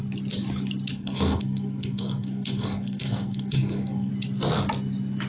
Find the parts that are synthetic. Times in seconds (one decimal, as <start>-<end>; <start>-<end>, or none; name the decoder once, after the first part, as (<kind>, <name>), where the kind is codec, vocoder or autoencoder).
0.9-4.1 (codec, SNAC)